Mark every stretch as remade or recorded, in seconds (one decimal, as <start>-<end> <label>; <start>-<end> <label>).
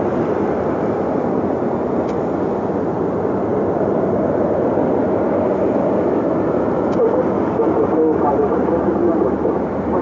0.0-10.0 recorded